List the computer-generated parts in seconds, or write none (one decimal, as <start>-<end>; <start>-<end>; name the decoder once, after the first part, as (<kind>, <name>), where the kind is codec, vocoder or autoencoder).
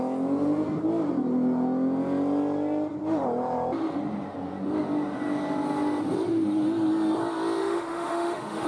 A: 7.6-8.7 (autoencoder, DAC-VAE)